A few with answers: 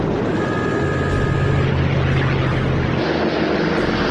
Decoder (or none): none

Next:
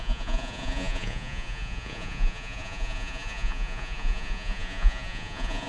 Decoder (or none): vocoder, Vocos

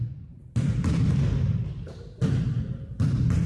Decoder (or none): none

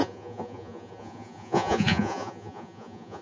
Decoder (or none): vocoder, Vocos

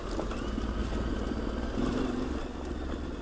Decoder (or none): none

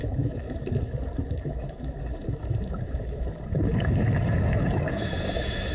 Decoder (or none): autoencoder, DAC-VAE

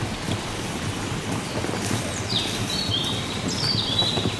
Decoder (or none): none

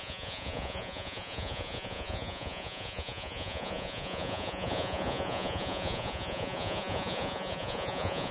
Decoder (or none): vocoder, Vocos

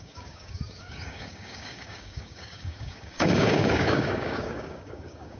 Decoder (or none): codec, DAC